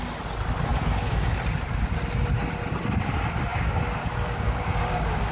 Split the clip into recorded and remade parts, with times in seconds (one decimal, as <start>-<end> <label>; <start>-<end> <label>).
0.0-0.7 recorded; 0.7-1.3 remade; 1.3-3.5 recorded; 3.5-5.3 remade